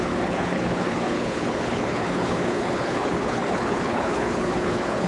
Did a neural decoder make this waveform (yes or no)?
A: yes